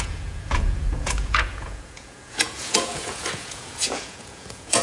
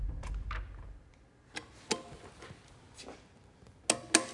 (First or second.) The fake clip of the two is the first